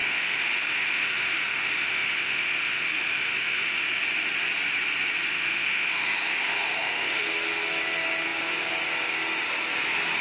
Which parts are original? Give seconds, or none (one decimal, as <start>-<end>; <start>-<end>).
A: 4.0-5.3; 7.3-10.2